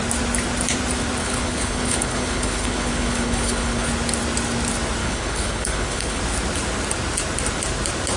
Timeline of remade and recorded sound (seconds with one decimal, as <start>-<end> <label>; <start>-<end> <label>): 0.0-1.2 recorded; 1.2-3.9 remade; 3.9-5.0 recorded; 5.0-6.2 remade; 6.2-8.2 recorded